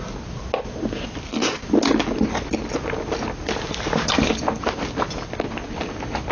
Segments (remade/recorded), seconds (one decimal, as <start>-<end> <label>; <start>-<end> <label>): 0.0-6.3 recorded